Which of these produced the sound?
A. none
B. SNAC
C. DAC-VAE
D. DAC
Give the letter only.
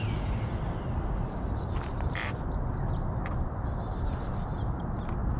A